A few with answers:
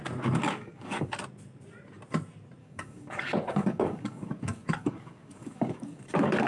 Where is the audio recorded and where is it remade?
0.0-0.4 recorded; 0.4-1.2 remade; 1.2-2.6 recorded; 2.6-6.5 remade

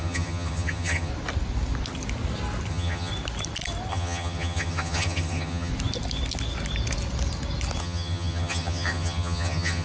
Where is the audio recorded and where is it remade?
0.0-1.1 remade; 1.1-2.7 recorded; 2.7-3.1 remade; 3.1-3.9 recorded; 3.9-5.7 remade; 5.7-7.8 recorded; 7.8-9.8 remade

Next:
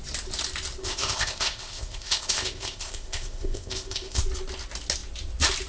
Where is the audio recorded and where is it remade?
0.0-0.8 recorded; 0.8-4.2 remade; 4.2-5.7 recorded

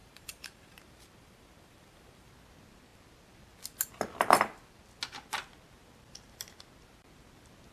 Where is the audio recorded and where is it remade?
0.0-2.3 remade; 2.3-7.7 recorded

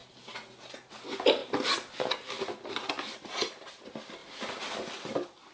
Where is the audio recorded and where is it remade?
0.0-5.5 recorded